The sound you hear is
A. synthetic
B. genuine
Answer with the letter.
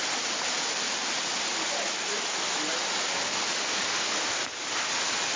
B